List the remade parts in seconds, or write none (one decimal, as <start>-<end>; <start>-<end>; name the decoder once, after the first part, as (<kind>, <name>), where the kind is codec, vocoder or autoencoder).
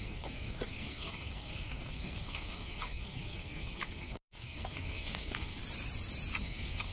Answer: 0.0-5.6 (codec, SNAC); 6.4-6.9